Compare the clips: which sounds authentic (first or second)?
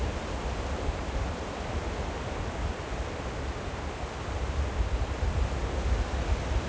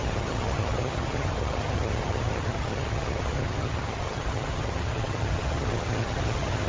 first